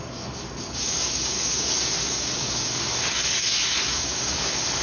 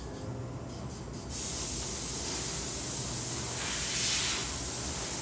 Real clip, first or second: second